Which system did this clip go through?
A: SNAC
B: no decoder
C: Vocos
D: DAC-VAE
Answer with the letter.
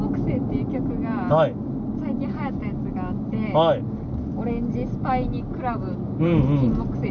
B